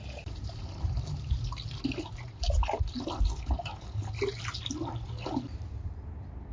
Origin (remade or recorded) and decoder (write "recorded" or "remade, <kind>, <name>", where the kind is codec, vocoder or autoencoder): recorded